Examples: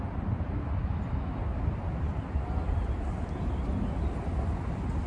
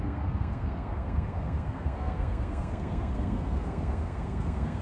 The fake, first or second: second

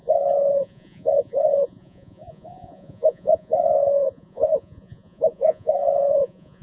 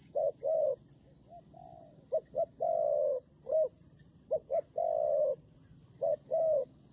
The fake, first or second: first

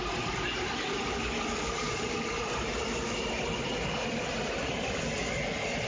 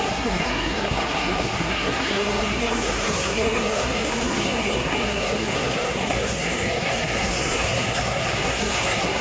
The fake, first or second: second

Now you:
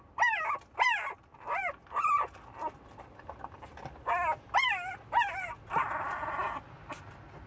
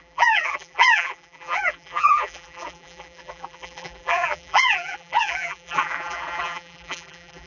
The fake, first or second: second